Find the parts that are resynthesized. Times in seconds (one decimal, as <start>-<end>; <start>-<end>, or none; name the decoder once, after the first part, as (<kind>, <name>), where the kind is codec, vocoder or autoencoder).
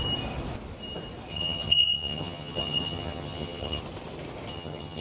1.3-3.8 (vocoder, HiFi-GAN); 4.5-5.0